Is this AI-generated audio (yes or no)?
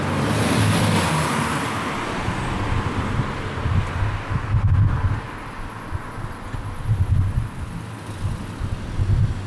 no